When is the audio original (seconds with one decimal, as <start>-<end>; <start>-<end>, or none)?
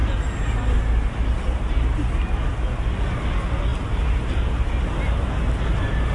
0.0-6.1